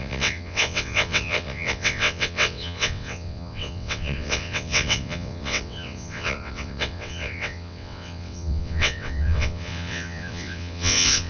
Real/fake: fake